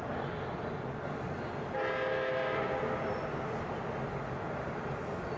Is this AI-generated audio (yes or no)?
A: no